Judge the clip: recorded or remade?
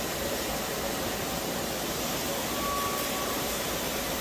recorded